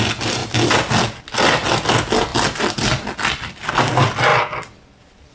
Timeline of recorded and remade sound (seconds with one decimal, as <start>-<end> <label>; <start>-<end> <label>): 0.0-5.3 recorded